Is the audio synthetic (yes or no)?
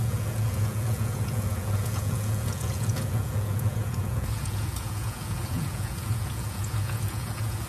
yes